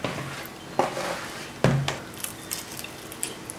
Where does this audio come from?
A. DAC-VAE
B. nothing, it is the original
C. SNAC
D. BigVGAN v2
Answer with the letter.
B